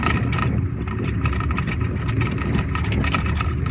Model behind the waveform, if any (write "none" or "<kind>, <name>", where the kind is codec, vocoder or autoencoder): none